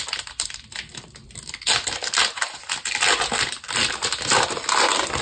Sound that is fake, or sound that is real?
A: real